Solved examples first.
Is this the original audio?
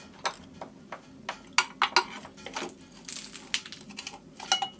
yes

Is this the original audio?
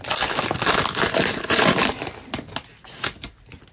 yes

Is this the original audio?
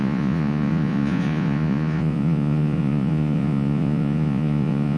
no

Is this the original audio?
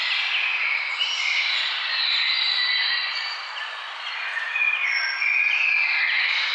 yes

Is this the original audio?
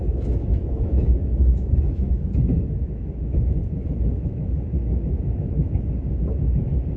no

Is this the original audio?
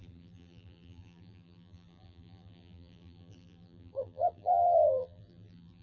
no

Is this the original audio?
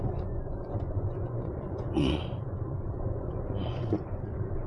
no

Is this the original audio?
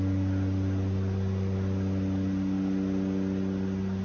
yes